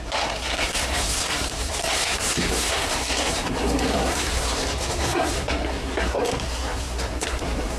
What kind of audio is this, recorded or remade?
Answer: remade